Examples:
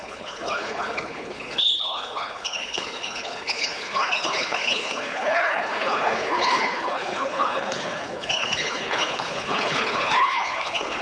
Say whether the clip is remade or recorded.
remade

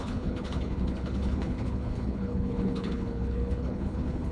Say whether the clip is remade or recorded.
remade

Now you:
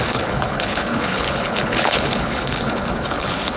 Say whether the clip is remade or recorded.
remade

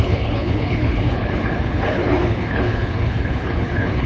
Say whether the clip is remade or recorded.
remade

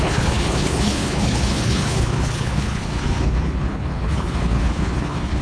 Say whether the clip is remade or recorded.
remade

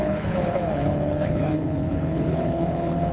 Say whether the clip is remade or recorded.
remade